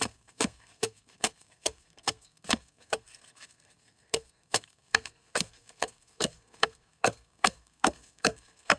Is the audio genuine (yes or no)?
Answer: no